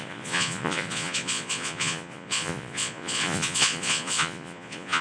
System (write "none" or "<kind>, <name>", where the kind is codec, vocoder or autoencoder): vocoder, Vocos